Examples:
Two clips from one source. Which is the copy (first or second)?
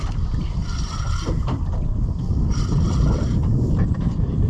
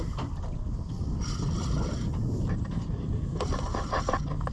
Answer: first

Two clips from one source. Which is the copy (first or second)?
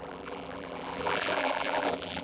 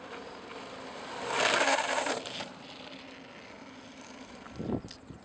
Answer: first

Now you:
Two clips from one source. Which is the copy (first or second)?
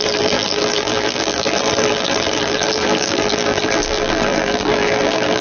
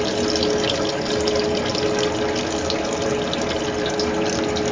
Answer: first